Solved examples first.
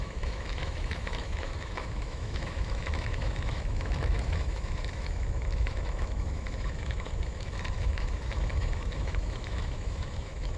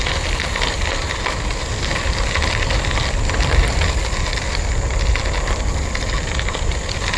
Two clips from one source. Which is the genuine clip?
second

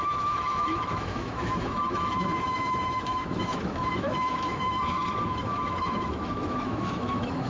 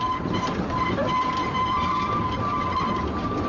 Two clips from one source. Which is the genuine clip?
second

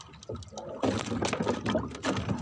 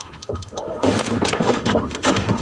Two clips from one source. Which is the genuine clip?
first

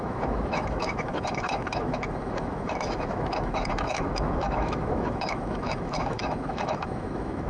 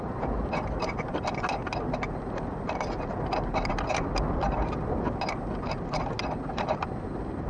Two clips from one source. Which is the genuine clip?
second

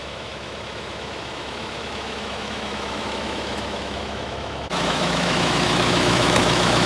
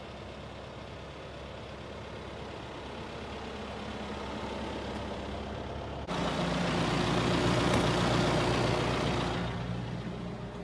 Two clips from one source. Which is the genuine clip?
second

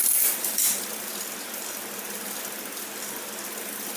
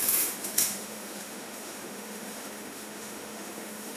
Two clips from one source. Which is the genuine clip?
first